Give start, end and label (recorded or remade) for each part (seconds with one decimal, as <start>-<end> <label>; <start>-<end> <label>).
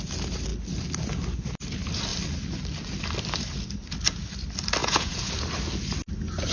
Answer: 0.0-4.8 recorded; 4.8-5.3 remade; 5.3-6.5 recorded